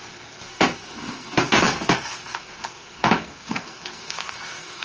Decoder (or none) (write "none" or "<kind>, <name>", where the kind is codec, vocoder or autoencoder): codec, SNAC